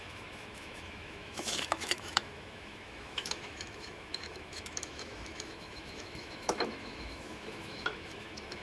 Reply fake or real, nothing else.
fake